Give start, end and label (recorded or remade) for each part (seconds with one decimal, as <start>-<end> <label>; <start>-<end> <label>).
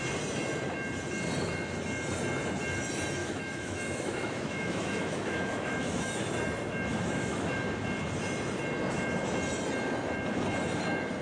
0.0-3.2 recorded; 3.2-6.1 remade; 6.1-6.9 recorded; 6.9-7.5 remade; 7.5-11.2 recorded